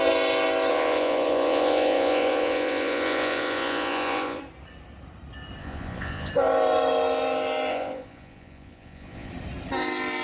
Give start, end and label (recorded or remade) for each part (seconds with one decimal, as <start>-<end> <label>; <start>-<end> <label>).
0.0-0.7 recorded; 0.7-4.4 remade; 4.4-5.6 recorded; 5.6-6.3 remade; 6.3-7.7 recorded; 7.7-9.3 remade; 9.3-10.2 recorded